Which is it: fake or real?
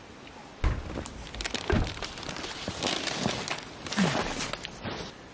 real